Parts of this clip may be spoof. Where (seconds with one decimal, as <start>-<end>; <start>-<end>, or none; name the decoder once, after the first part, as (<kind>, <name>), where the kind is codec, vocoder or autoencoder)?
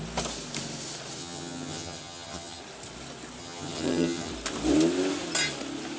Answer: 1.2-2.6 (vocoder, HiFi-GAN); 3.4-4.3